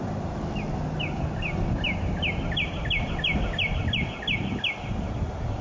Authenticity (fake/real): real